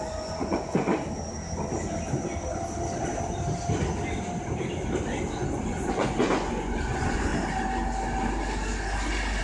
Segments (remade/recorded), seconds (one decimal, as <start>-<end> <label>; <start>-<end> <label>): 0.0-0.9 remade; 0.9-5.3 recorded; 5.3-7.3 remade; 7.3-9.4 recorded